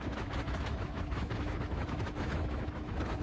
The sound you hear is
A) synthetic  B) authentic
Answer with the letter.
A